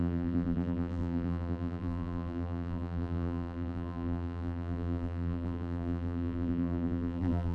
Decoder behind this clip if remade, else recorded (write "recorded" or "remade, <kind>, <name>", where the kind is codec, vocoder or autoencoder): remade, vocoder, BigVGAN v2